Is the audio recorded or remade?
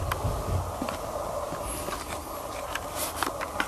recorded